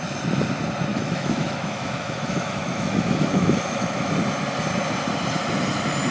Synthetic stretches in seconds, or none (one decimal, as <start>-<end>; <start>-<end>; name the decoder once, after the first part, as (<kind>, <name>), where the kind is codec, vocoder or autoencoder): 0.9-4.1 (autoencoder, DAC-VAE)